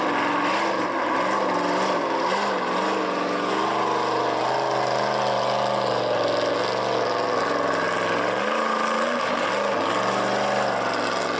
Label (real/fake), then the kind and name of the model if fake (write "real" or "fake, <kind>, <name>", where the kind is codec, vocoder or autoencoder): real